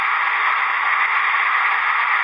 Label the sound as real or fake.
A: real